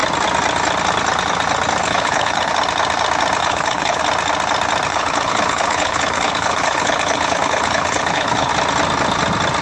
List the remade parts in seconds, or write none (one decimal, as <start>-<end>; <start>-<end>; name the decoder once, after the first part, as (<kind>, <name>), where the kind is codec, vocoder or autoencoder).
1.8-2.5 (codec, HILCodec); 3.4-4.0; 4.9-8.5